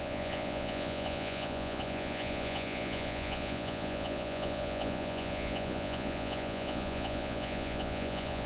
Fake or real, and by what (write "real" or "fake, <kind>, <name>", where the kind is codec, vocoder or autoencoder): fake, vocoder, Vocos